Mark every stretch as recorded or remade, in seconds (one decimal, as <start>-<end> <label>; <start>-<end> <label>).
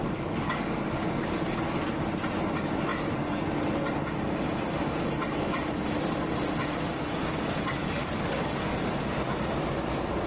0.0-1.6 remade; 1.6-7.8 recorded; 7.8-8.9 remade; 8.9-10.3 recorded